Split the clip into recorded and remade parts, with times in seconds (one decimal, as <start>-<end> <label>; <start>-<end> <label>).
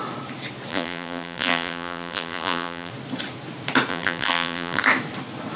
0.0-0.7 recorded; 0.7-2.9 remade; 2.9-3.9 recorded; 3.9-4.8 remade; 4.8-5.6 recorded